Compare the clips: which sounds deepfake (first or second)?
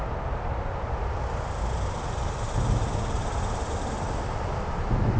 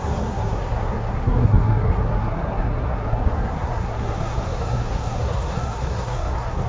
second